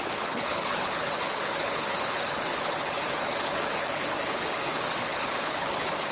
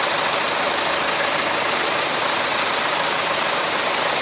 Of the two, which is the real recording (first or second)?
second